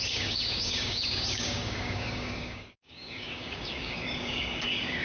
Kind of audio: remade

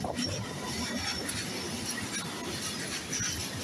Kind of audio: recorded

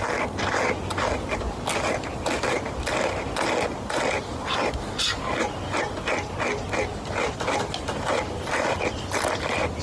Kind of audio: recorded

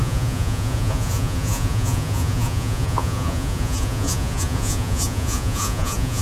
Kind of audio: remade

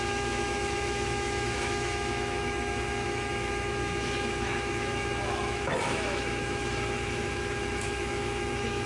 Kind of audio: remade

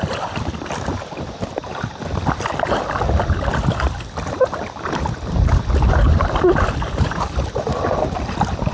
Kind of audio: recorded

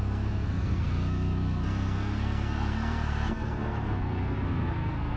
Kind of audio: remade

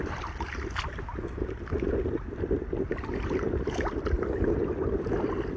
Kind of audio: recorded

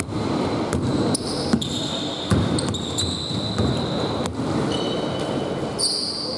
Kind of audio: recorded